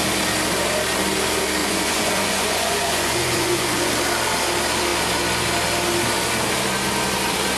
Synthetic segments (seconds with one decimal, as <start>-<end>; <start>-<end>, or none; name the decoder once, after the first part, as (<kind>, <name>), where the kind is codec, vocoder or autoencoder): 1.6-3.9 (vocoder, Vocos)